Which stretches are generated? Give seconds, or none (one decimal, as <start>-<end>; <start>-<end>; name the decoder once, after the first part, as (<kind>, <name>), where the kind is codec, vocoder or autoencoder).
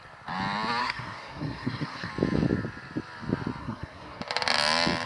0.8-2.1 (codec, SNAC); 3.6-4.2